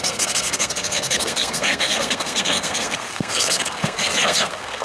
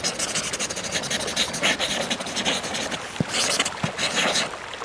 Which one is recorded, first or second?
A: second